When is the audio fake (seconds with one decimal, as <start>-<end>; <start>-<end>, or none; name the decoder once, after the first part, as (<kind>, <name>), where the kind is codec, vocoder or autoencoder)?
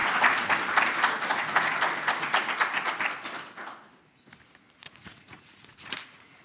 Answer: 4.8-6.4 (vocoder, Vocos)